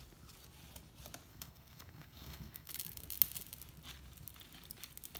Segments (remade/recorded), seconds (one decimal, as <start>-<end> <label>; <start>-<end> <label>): 0.0-1.3 recorded; 1.3-2.7 remade; 2.7-5.2 recorded